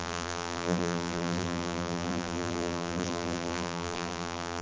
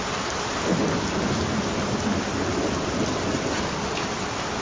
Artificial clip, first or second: first